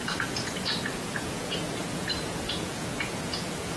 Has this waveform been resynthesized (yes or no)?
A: yes